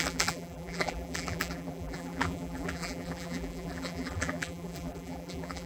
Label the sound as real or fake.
fake